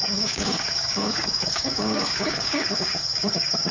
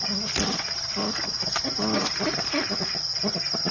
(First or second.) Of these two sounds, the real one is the second